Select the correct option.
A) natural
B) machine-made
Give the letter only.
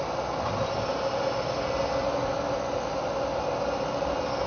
A